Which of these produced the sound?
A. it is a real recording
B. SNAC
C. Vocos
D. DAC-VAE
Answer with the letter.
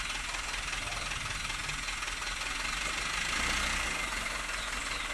A